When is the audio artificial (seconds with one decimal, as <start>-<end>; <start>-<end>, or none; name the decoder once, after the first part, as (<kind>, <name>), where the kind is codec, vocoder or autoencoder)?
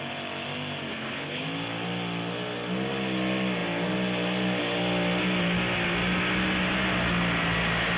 0.9-1.4 (codec, HILCodec)